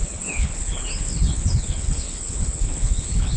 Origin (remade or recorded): remade